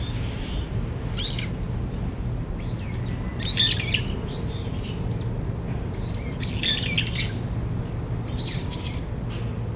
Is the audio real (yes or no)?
yes